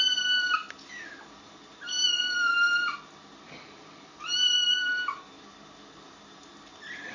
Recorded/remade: recorded